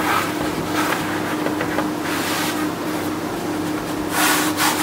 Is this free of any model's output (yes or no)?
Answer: yes